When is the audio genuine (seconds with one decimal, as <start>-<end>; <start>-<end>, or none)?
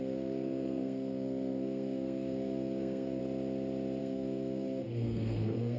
3.2-4.0